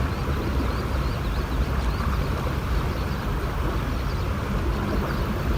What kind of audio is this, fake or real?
real